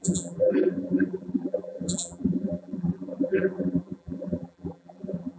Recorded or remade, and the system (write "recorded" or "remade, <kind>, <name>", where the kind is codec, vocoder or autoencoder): remade, vocoder, BigVGAN v2